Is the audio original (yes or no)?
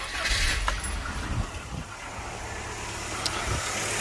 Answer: yes